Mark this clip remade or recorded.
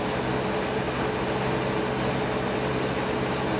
recorded